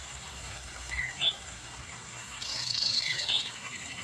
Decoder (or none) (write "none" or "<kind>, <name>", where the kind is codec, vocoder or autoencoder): codec, SNAC